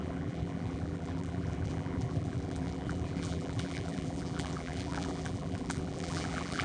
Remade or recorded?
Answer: remade